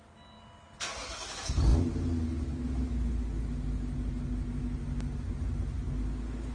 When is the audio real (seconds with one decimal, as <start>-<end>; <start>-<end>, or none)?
0.0-6.5